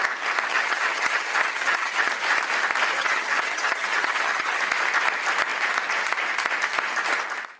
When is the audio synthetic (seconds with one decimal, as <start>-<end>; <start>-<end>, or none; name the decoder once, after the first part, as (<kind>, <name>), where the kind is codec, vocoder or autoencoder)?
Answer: 0.5-2.1 (vocoder, HiFi-GAN); 2.9-4.6